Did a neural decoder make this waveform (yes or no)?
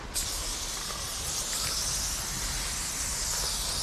no